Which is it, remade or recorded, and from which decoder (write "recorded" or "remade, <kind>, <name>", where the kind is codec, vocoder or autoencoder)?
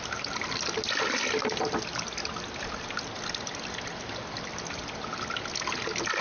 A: recorded